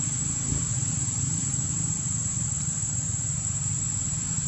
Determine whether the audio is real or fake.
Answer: fake